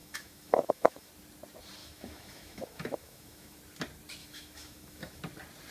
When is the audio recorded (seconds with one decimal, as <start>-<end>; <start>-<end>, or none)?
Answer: 1.1-1.8; 3.6-4.2; 5.2-5.7